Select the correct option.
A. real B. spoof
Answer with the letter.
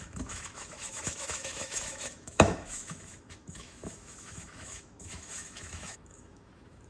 B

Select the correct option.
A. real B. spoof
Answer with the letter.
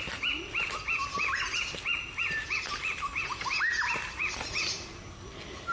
A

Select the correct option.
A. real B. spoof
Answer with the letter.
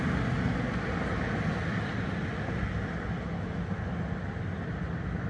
A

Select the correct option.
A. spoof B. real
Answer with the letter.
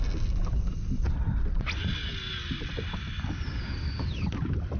B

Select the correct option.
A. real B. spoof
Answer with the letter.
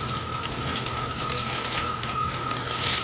B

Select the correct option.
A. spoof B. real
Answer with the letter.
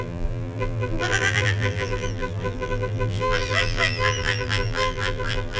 A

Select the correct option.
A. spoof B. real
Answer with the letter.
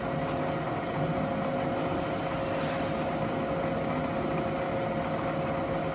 B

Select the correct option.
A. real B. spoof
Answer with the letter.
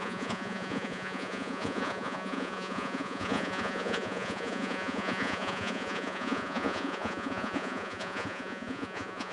B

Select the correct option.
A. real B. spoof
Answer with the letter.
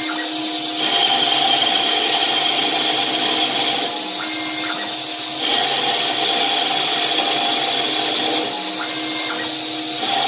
A